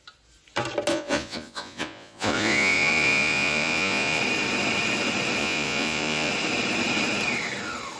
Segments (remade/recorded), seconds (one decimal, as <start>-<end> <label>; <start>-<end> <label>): 0.0-0.9 recorded; 0.9-4.2 remade; 4.2-5.4 recorded; 5.4-6.3 remade; 6.3-8.0 recorded